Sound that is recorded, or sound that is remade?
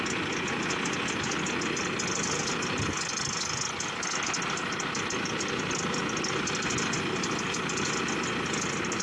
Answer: recorded